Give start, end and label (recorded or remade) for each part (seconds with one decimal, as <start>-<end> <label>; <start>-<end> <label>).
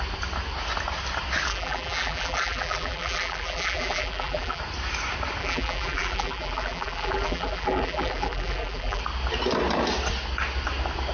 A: 0.0-1.5 recorded; 1.5-4.6 remade; 4.6-5.4 recorded; 5.4-9.0 remade; 9.0-11.1 recorded